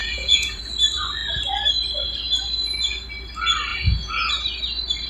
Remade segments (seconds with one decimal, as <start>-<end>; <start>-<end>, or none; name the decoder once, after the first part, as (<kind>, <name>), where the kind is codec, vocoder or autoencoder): 0.0-0.6 (vocoder, Vocos); 3.7-4.3